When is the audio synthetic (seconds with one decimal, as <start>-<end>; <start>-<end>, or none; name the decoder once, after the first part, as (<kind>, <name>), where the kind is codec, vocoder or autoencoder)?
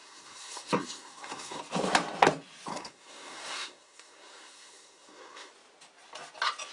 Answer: 0.0-1.6 (codec, SNAC); 2.7-5.5